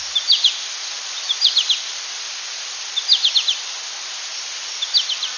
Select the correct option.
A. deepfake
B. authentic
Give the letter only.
B